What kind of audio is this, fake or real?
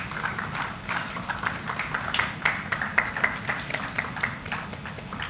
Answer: real